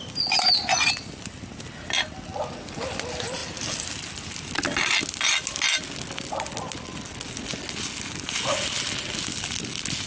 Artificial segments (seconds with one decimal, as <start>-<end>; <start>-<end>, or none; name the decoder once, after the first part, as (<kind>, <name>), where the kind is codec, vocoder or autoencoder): none